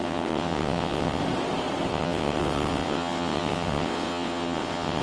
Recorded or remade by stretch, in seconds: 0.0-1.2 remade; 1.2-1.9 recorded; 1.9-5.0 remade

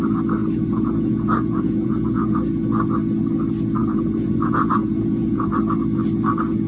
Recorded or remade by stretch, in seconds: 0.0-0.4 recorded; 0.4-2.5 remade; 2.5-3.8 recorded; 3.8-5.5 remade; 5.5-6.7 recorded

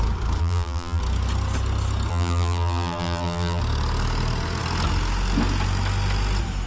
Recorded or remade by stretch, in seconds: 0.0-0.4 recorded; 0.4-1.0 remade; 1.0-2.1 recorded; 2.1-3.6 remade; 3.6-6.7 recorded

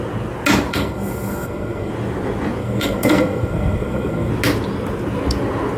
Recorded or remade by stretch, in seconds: 0.0-0.7 recorded; 0.7-1.9 remade; 1.9-2.6 recorded; 2.6-4.3 remade; 4.3-5.8 recorded